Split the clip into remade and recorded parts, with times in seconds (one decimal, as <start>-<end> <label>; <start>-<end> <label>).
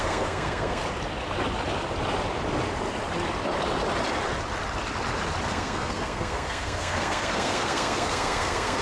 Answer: 0.0-0.8 remade; 0.8-5.5 recorded; 5.5-8.8 remade